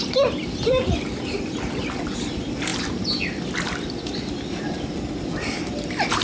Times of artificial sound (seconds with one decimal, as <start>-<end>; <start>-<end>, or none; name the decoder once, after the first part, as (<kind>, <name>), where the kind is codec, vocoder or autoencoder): none